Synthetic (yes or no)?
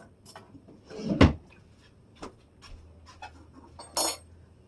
no